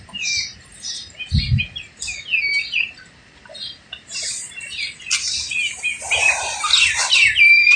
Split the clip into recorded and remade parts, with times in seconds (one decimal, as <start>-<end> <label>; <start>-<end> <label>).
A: 0.0-7.8 recorded